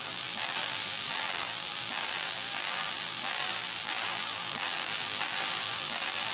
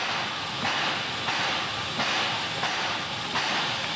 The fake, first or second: first